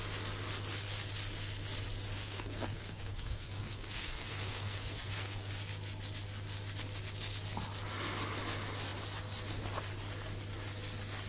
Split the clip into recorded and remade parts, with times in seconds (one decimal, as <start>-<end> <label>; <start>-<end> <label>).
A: 0.0-2.2 recorded; 2.2-5.5 remade; 5.5-11.3 recorded